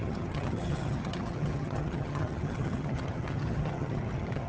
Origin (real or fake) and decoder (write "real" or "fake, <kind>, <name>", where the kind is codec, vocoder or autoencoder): fake, vocoder, HiFi-GAN